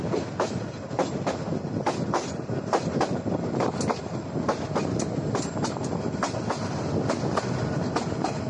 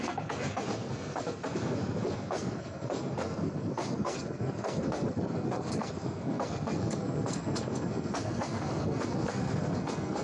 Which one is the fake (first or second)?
second